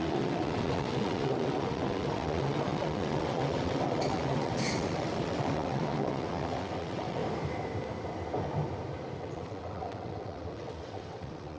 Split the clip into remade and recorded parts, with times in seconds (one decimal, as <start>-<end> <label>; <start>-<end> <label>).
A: 0.0-7.2 remade; 7.2-9.2 recorded; 9.2-11.6 remade